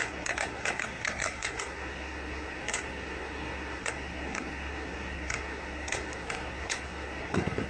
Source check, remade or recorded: remade